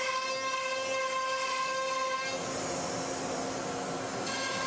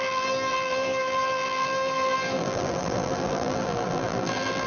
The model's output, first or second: second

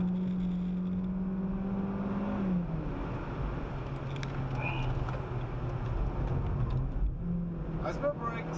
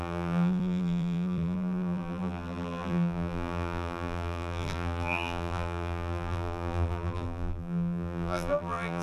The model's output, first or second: second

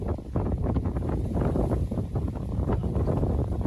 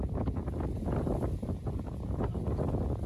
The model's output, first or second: first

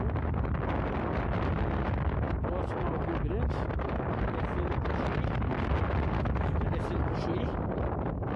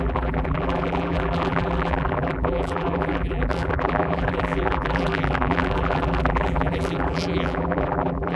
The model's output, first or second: second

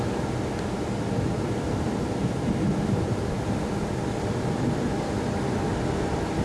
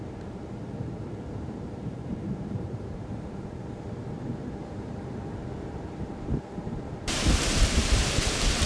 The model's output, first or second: second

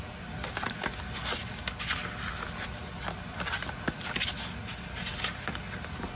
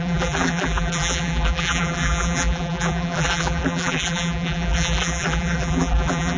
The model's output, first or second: second